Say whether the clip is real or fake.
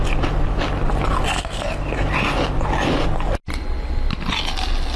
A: real